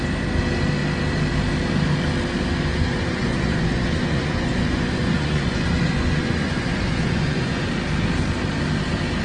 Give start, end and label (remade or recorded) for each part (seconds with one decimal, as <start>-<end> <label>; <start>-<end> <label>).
0.0-2.7 recorded; 2.7-7.7 remade; 7.7-9.2 recorded